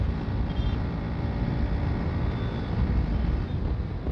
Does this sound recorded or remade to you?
recorded